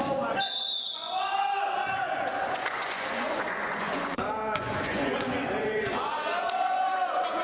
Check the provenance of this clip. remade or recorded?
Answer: remade